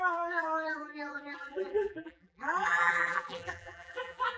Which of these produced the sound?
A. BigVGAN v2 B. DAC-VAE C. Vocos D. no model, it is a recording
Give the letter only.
A